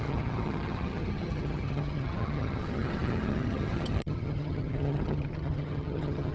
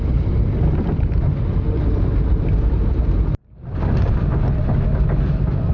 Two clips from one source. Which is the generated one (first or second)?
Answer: first